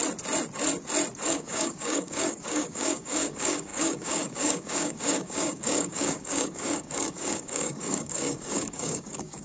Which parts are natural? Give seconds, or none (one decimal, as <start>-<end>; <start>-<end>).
0.0-1.3